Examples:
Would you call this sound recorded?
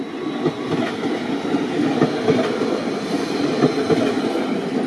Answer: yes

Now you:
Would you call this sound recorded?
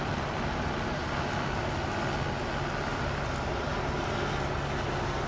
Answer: yes